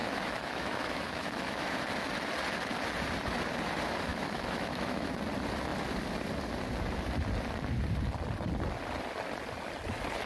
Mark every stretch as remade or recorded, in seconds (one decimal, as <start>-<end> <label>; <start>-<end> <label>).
0.0-1.8 remade; 1.8-4.1 recorded; 4.1-5.1 remade; 5.1-10.3 recorded